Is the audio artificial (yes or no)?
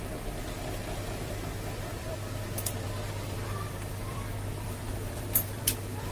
yes